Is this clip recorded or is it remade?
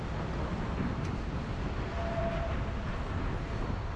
recorded